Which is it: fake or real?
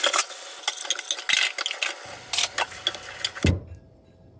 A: real